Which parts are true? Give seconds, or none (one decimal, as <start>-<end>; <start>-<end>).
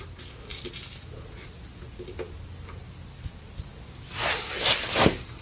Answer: 0.0-5.4